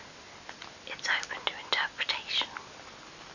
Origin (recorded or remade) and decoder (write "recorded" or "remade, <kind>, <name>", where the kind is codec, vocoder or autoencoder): recorded